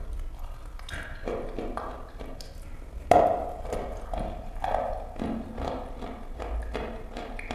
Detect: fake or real real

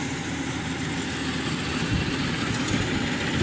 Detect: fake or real real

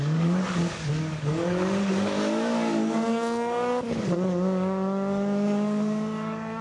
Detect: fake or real fake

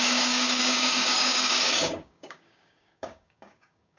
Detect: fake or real fake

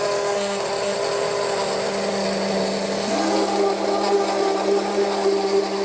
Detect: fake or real real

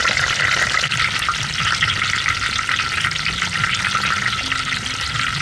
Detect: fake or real real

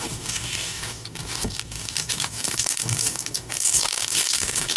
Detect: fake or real fake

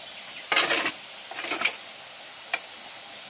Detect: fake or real real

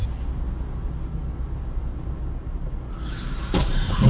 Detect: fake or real real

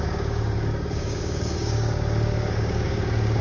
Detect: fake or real fake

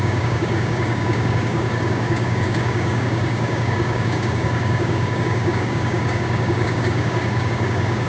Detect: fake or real fake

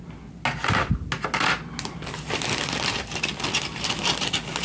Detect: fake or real real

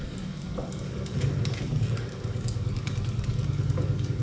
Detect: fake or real fake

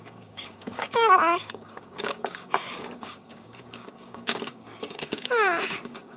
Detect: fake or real fake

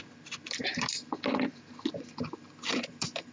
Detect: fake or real real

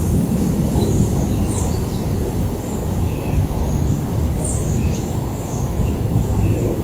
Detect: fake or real fake